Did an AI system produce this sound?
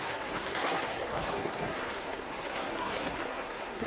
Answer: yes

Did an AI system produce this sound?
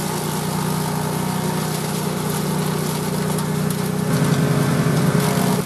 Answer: no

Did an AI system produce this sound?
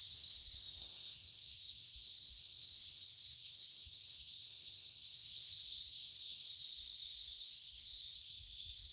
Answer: yes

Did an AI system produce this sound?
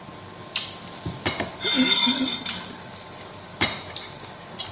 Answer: no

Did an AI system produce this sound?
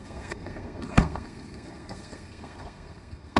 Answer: yes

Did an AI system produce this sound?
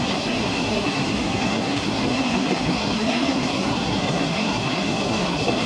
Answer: yes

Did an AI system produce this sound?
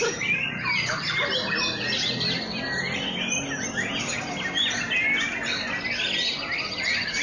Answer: no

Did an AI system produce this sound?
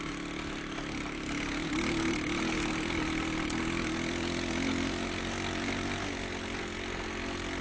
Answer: no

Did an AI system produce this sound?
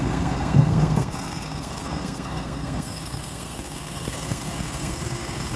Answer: yes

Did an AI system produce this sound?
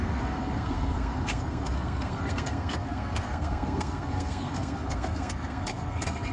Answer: yes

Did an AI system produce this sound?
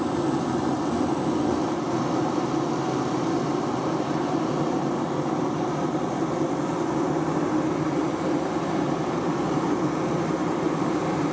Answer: no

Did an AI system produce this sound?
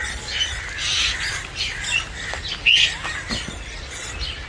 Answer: no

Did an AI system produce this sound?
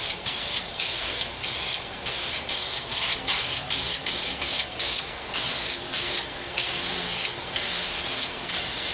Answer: yes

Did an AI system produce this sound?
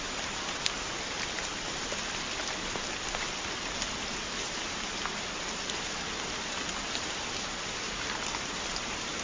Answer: no